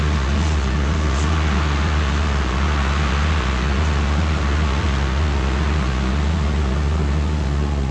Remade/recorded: remade